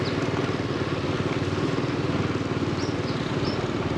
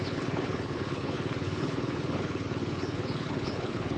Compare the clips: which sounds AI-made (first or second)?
second